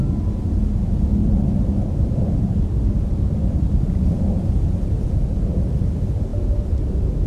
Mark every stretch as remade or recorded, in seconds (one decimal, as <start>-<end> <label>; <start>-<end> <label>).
0.0-1.2 recorded; 1.2-5.6 remade; 5.6-7.3 recorded